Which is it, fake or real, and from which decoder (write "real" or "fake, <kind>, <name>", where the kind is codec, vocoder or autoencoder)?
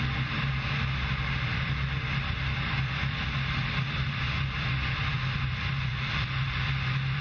fake, vocoder, BigVGAN v2